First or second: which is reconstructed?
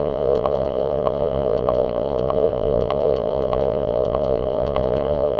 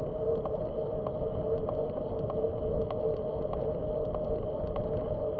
first